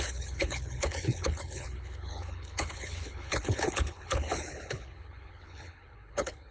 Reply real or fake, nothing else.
fake